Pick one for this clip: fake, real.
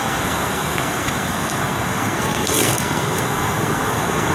fake